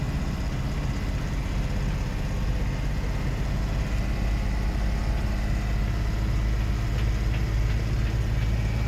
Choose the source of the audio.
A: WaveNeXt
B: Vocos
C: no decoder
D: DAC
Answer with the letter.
C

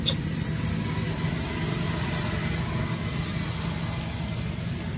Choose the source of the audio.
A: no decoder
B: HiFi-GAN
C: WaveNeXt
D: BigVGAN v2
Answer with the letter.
A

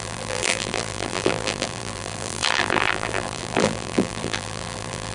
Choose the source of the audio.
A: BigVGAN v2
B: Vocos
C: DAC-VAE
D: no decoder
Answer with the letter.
A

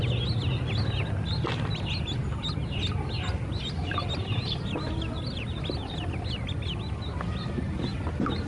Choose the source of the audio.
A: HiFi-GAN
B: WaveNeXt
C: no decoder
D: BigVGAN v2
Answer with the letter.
C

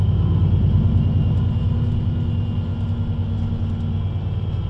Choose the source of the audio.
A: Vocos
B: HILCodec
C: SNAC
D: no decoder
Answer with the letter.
D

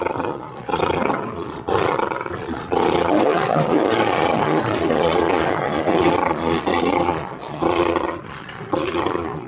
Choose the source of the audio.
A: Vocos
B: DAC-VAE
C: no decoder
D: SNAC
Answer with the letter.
A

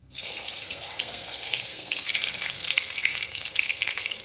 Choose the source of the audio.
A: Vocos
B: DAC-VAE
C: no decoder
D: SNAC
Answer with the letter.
D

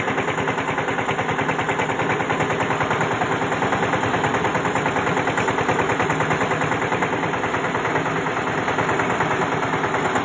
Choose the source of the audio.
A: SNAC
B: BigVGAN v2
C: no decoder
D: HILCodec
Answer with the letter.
C